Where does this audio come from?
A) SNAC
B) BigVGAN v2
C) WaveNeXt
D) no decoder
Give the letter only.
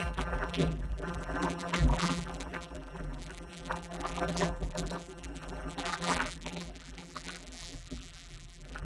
B